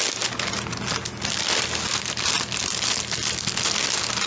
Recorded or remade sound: recorded